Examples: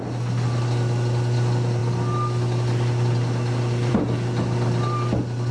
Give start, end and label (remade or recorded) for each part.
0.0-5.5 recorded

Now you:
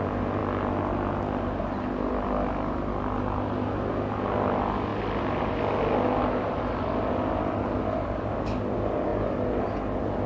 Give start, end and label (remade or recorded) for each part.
0.0-10.3 recorded

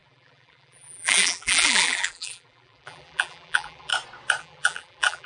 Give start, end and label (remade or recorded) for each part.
0.0-3.9 remade; 3.9-4.4 recorded; 4.4-5.3 remade

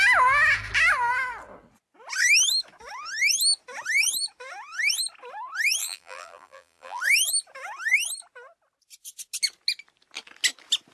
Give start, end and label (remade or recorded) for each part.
0.0-5.8 recorded; 5.8-7.0 remade; 7.0-10.9 recorded

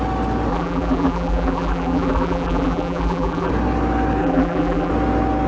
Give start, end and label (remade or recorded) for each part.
0.0-0.5 recorded; 0.5-3.5 remade; 3.5-4.2 recorded; 4.2-4.9 remade; 4.9-5.5 recorded

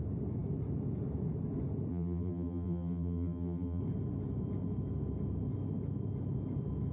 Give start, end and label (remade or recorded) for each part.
0.0-1.9 recorded; 1.9-3.8 remade; 3.8-6.9 recorded